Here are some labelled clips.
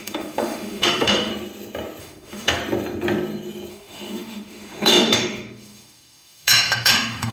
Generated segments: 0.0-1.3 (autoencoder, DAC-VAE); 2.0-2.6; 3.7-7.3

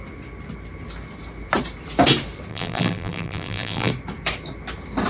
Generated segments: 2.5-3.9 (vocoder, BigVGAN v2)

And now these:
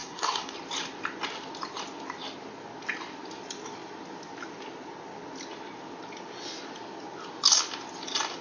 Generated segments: 0.0-0.5 (codec, SNAC)

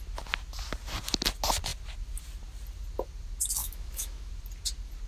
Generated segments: 3.6-4.3 (autoencoder, DAC-VAE)

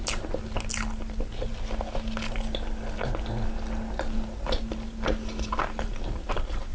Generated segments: none

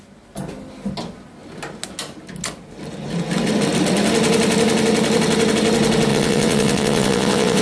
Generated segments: 6.1-7.6 (vocoder, WaveNeXt)

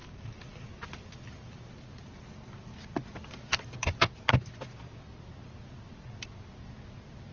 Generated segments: none